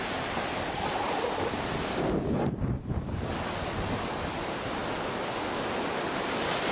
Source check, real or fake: real